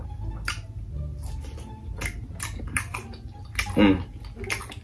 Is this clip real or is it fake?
real